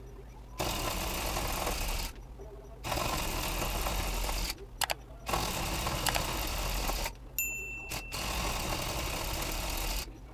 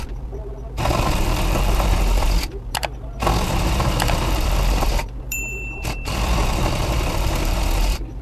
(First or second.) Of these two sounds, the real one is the first